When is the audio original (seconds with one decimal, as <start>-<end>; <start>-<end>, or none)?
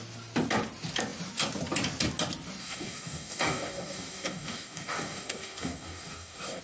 0.0-2.6